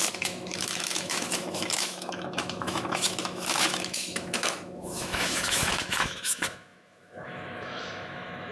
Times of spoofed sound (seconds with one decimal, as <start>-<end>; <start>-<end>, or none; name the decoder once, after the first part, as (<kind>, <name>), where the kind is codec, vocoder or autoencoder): 0.0-8.5 (autoencoder, DAC-VAE)